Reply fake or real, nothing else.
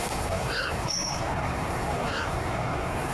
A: fake